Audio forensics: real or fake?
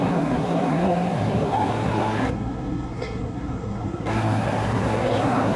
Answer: fake